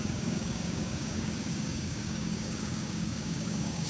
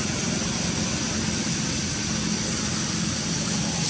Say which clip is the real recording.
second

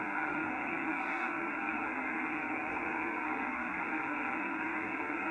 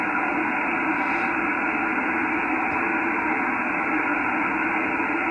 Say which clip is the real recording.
second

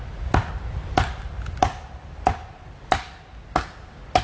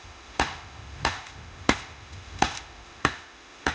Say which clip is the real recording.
first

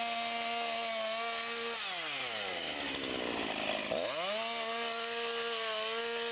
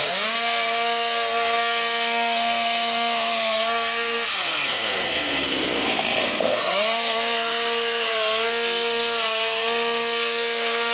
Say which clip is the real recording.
first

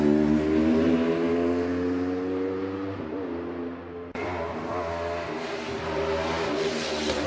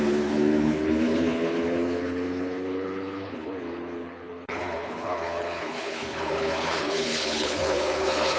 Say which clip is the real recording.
first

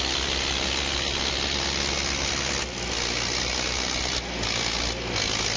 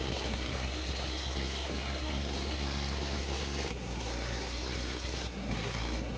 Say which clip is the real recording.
first